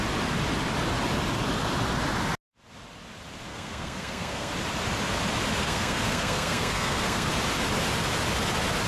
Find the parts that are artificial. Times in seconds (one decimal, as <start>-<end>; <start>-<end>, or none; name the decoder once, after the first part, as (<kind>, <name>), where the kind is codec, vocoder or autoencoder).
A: 3.5-4.5 (codec, SNAC); 5.6-7.3